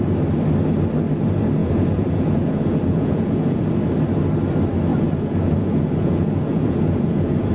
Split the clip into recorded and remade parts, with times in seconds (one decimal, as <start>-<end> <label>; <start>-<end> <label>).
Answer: 0.0-1.6 recorded; 1.6-3.7 remade; 3.7-4.9 recorded; 4.9-7.5 remade